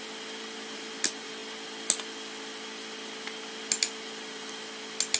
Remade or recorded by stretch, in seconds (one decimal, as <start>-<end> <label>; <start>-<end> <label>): 0.0-5.2 recorded